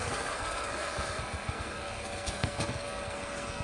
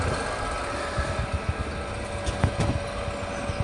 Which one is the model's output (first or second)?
first